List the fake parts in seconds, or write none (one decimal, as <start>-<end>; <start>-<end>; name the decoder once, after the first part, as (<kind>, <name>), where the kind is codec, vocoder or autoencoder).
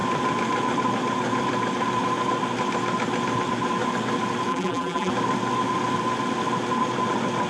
4.5-5.1 (vocoder, BigVGAN v2)